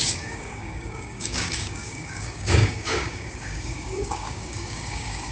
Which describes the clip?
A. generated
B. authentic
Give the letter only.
A